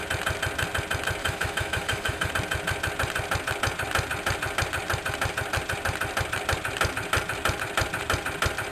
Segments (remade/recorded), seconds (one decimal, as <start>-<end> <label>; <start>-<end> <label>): 0.0-1.2 recorded; 1.2-2.3 remade; 2.3-8.7 recorded